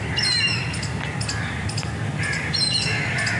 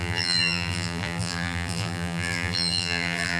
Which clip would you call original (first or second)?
first